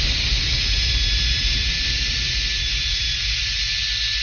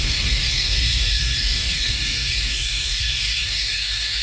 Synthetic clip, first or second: second